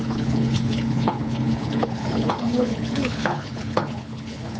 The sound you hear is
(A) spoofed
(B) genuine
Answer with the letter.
A